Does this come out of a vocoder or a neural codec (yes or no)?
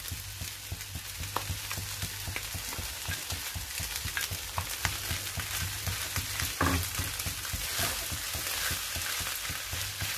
no